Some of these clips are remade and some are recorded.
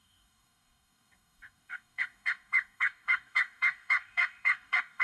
remade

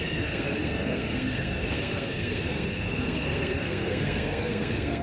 remade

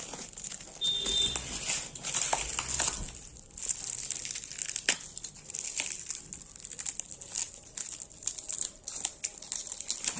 recorded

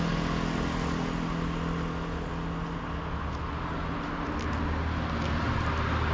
recorded